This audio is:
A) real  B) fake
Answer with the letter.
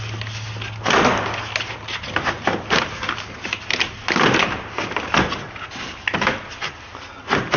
A